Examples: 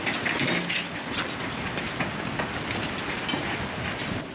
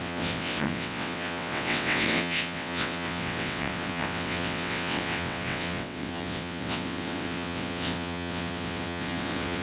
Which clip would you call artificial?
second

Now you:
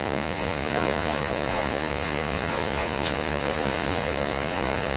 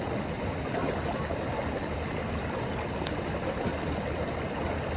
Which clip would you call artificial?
first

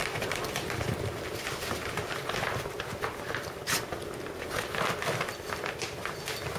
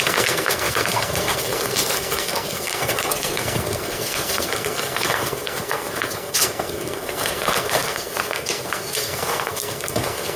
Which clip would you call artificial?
second